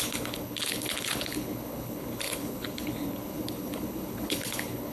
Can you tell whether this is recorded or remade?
remade